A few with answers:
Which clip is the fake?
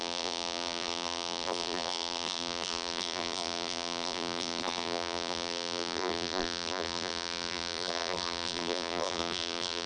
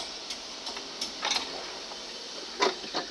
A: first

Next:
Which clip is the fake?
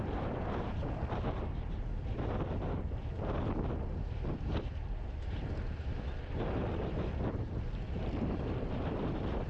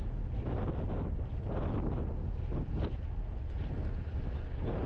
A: first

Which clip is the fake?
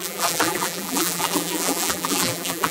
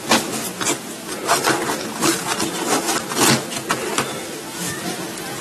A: first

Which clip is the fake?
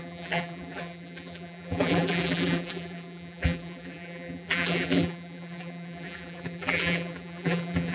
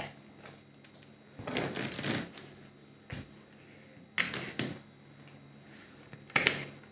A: first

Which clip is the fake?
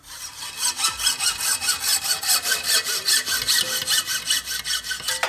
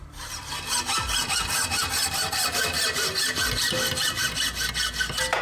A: first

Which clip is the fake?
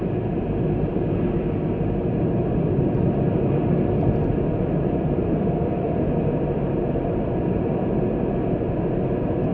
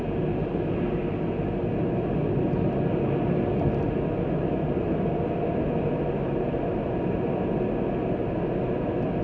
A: first